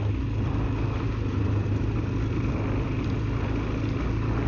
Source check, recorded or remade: recorded